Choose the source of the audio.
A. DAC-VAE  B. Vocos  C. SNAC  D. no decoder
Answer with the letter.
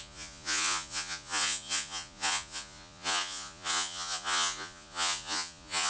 B